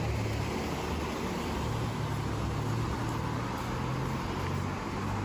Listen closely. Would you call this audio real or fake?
real